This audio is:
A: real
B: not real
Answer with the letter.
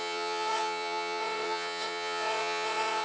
B